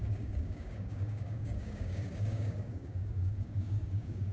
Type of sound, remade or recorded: remade